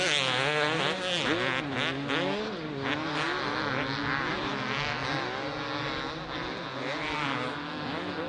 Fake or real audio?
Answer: real